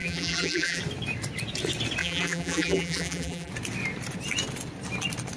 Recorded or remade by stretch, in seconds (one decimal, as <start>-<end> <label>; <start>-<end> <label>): 0.0-0.8 remade; 0.8-2.0 recorded; 2.0-3.5 remade; 3.5-5.4 recorded